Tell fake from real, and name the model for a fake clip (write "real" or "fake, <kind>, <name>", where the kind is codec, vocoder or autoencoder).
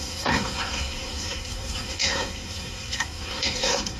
fake, codec, SNAC